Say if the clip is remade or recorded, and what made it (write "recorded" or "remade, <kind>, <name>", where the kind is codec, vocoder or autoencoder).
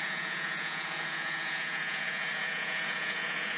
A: remade, vocoder, Vocos